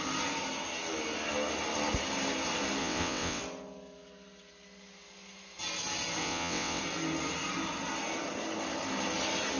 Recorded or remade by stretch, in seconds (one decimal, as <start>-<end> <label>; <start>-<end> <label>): 0.0-2.8 recorded; 2.8-3.4 remade; 3.4-6.2 recorded; 6.2-6.8 remade; 6.8-9.6 recorded